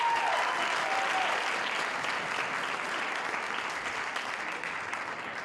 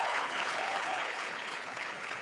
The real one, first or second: first